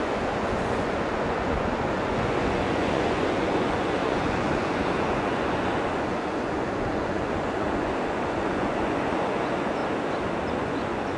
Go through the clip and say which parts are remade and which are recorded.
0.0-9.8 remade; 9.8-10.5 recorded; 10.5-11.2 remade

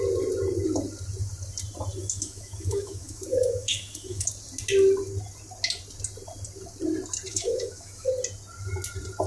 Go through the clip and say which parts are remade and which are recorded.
0.0-2.0 recorded; 2.0-4.3 remade; 4.3-7.3 recorded; 7.3-8.1 remade; 8.1-9.3 recorded

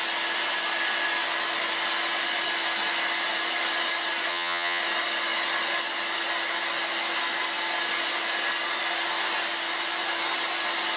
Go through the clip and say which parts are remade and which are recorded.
0.0-4.3 recorded; 4.3-4.8 remade; 4.8-11.0 recorded